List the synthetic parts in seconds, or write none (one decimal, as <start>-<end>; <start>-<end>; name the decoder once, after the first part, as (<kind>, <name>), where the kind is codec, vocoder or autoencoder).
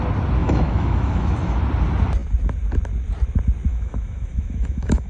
0.4-1.6 (autoencoder, DAC-VAE); 3.7-5.1